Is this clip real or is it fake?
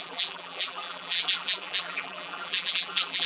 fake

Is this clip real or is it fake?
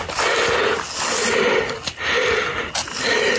real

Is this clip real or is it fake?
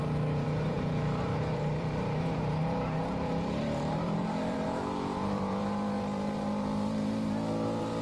fake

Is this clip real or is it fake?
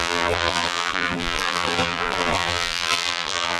fake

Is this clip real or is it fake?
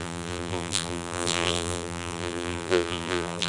fake